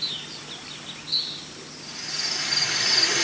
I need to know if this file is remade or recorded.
recorded